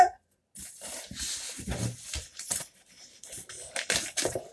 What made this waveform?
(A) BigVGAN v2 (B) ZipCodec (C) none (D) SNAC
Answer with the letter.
C